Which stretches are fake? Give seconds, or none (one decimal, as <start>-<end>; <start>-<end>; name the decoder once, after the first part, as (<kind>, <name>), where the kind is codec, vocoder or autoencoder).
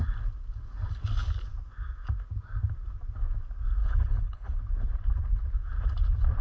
3.8-4.6 (codec, HILCodec)